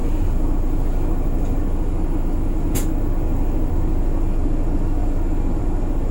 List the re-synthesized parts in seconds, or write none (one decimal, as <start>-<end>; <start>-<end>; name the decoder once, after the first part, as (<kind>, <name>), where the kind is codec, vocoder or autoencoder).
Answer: 5.0-5.6 (vocoder, BigVGAN v2)